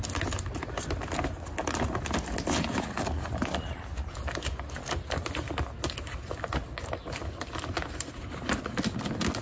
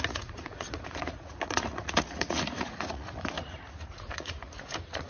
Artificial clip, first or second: second